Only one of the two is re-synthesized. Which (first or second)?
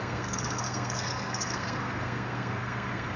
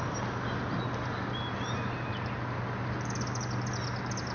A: first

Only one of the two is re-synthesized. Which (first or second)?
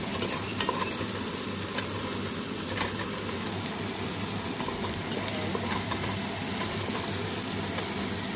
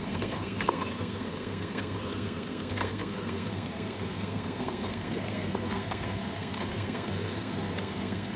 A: second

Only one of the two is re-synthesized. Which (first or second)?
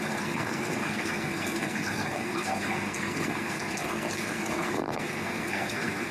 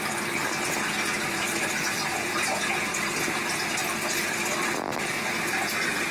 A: first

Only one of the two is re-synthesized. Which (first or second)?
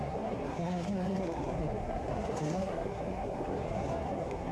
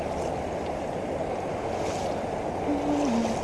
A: first